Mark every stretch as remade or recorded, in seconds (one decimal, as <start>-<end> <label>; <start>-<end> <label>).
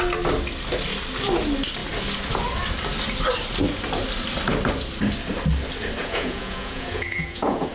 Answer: 0.0-6.0 recorded; 6.0-7.7 remade